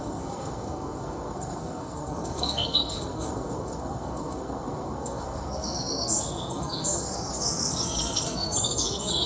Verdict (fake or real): fake